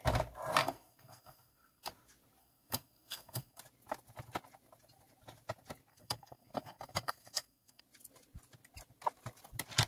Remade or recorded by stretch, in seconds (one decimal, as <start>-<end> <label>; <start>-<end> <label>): 0.0-0.6 recorded; 0.6-1.9 remade; 1.9-2.4 recorded; 2.4-3.6 remade; 3.6-5.9 recorded; 5.9-7.8 remade; 7.8-9.9 recorded